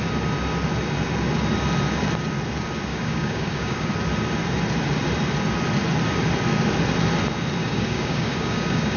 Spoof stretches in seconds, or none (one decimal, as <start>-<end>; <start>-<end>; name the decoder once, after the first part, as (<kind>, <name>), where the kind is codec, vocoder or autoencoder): 2.9-3.9 (codec, DAC); 7.6-9.0